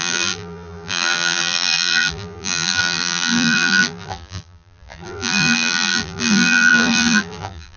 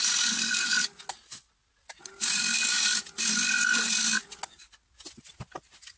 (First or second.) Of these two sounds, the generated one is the first